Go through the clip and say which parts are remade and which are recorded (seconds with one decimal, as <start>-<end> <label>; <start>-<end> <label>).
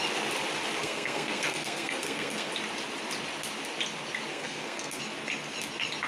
0.0-0.8 recorded; 0.8-2.5 remade; 2.5-4.3 recorded; 4.3-5.0 remade; 5.0-6.1 recorded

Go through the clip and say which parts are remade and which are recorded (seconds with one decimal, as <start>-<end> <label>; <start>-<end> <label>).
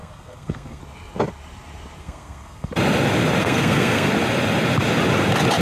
0.0-0.8 remade; 0.8-2.0 recorded; 2.0-2.7 remade; 2.7-3.4 recorded; 3.4-4.1 remade; 4.1-5.6 recorded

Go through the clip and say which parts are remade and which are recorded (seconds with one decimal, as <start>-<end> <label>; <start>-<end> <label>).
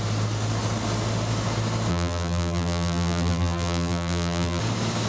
0.0-1.9 recorded; 1.9-4.6 remade; 4.6-5.1 recorded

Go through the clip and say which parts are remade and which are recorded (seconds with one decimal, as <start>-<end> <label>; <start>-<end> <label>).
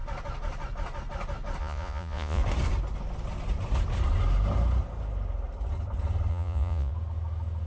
0.0-1.6 recorded; 1.6-2.4 remade; 2.4-6.3 recorded; 6.3-6.9 remade; 6.9-7.7 recorded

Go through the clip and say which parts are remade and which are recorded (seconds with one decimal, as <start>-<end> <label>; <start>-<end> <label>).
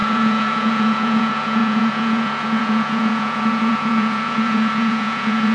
0.0-5.5 remade